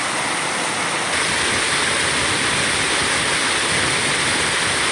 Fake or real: real